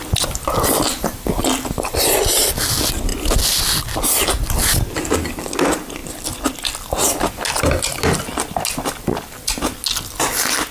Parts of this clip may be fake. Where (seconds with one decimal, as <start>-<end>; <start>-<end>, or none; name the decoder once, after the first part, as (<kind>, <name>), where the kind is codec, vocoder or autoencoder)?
none